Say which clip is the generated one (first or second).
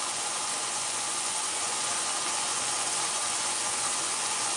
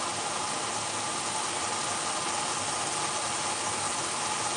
first